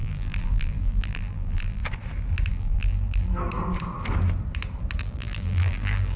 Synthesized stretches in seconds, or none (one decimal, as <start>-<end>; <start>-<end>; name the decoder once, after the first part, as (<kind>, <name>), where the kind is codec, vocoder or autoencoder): 0.0-1.8 (vocoder, BigVGAN v2); 2.5-3.3; 5.0-6.2